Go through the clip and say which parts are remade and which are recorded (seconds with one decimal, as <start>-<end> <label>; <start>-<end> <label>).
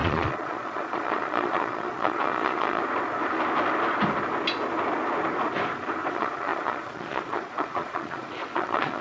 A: 0.0-2.8 remade; 2.8-6.1 recorded; 6.1-9.0 remade